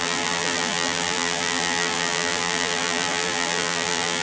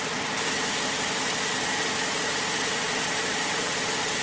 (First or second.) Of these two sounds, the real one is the second